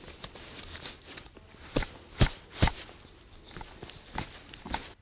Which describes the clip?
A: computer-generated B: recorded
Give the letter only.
B